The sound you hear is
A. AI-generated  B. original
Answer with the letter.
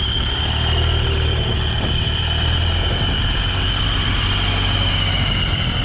B